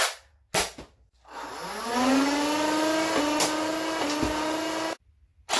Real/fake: real